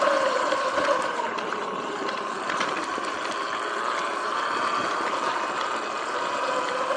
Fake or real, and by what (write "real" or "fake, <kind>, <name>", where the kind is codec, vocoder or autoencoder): fake, vocoder, BigVGAN v2